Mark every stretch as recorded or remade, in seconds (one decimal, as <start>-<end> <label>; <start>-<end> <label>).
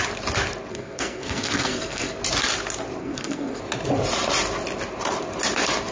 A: 0.0-0.7 recorded; 0.7-2.2 remade; 2.2-3.0 recorded; 3.0-3.6 remade; 3.6-5.9 recorded